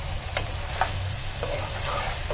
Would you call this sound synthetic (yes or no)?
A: no